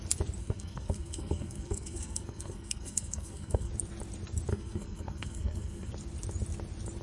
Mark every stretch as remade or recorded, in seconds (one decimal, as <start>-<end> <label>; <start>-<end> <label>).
0.0-0.4 recorded; 0.4-3.7 remade; 3.7-4.5 recorded; 4.5-5.9 remade; 5.9-7.0 recorded